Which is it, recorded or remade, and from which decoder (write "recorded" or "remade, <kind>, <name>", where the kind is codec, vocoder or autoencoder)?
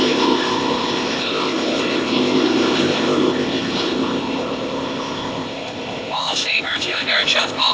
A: remade, codec, ZipCodec